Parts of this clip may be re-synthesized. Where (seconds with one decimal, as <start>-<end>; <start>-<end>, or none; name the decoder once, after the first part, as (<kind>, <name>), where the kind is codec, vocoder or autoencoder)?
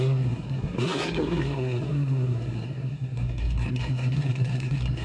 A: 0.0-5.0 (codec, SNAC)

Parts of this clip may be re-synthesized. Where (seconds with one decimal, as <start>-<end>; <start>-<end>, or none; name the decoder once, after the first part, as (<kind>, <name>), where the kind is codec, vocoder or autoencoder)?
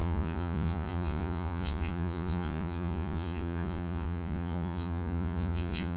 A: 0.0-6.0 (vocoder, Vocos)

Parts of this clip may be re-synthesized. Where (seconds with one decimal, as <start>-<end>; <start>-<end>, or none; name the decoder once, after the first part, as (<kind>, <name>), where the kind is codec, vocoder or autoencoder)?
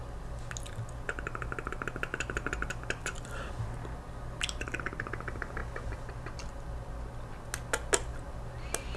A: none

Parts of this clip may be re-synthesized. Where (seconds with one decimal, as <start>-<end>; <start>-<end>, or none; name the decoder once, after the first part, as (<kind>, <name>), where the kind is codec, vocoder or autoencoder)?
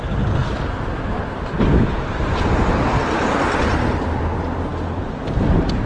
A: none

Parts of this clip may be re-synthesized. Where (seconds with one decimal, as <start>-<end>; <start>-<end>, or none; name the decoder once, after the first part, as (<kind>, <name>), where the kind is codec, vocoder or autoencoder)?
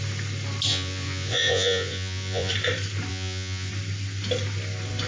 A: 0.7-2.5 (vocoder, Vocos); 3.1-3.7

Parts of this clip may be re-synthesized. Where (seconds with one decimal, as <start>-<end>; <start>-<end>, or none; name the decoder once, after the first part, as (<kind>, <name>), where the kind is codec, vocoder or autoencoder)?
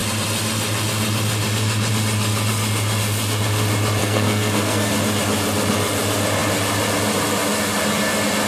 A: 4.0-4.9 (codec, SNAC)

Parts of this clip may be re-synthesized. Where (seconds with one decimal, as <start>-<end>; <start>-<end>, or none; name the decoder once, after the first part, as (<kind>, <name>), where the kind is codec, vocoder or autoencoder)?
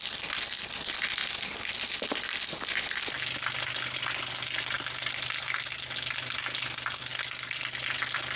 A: none